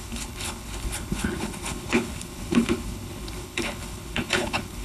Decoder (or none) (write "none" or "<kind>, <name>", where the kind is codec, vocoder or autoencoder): codec, HILCodec